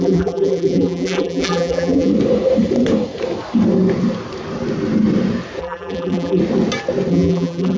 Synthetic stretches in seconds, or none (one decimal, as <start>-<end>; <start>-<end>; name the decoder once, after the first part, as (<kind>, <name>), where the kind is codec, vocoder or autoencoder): 0.0-2.1 (vocoder, BigVGAN v2); 5.6-6.4; 7.1-7.8